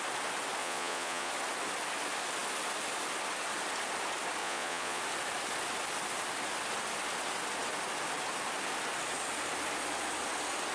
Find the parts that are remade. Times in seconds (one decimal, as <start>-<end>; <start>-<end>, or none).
0.6-1.3; 4.4-5.0